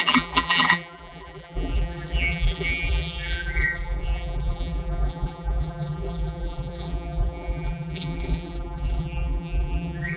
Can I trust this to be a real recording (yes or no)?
no